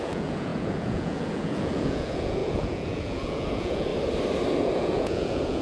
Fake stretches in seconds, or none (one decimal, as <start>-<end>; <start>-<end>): 0.0-3.9; 4.6-5.6